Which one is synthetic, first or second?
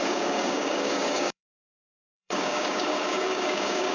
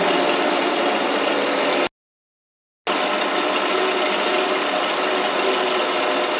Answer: first